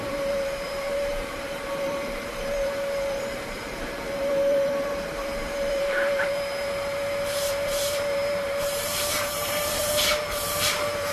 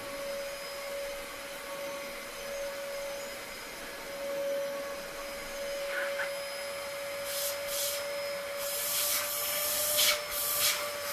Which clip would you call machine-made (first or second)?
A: first